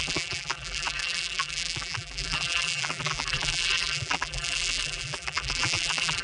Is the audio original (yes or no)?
no